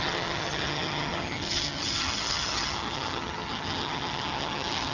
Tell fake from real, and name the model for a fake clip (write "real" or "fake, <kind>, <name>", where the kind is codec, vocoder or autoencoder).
fake, vocoder, HiFi-GAN